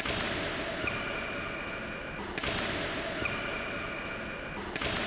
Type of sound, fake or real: real